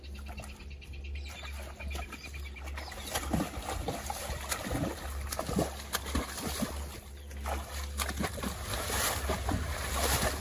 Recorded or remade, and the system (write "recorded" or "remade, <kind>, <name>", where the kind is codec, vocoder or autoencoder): recorded